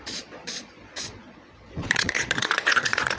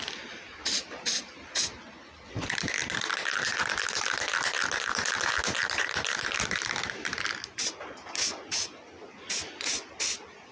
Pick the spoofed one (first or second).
first